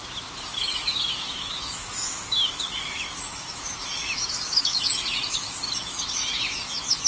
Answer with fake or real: fake